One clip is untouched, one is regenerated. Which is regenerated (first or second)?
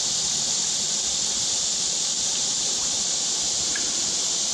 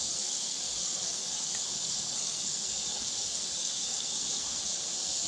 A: second